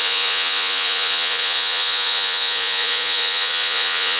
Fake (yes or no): yes